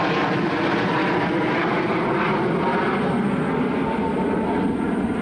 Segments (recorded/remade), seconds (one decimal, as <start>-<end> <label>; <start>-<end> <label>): 0.0-5.2 recorded